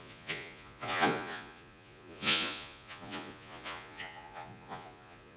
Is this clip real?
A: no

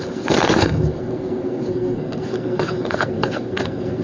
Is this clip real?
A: no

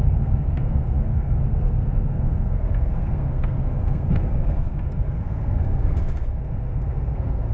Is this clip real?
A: no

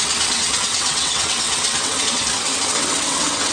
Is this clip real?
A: no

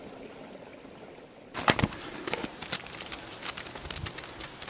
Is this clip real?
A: yes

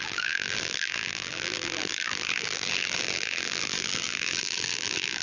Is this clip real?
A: no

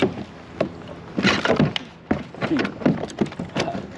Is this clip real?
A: yes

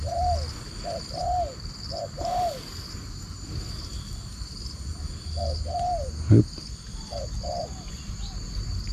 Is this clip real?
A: yes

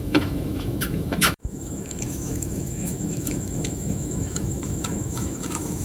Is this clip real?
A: no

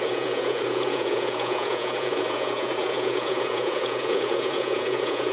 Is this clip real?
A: no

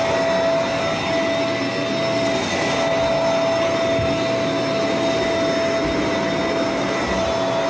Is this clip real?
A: yes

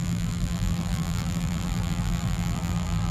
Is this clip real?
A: no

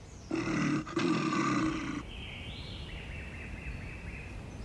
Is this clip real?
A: yes